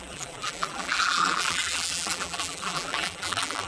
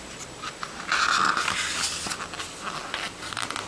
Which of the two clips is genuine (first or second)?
second